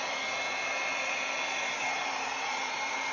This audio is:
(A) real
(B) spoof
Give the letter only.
B